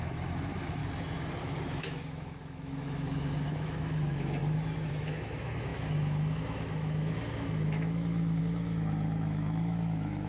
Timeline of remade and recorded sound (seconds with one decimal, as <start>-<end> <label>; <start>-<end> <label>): 0.0-0.8 remade; 0.8-1.4 recorded; 1.4-4.4 remade; 4.4-4.9 recorded; 4.9-10.3 remade